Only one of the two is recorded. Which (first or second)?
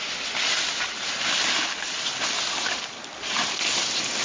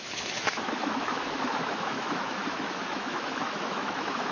first